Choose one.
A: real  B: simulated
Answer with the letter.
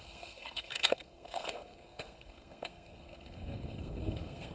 B